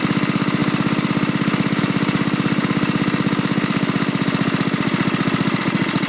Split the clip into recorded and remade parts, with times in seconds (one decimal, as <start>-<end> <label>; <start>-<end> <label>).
0.0-6.1 recorded